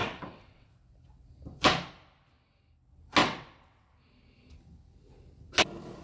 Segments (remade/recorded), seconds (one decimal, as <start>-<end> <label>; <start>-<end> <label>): 0.0-0.7 remade; 0.7-3.2 recorded; 3.2-3.9 remade; 3.9-6.0 recorded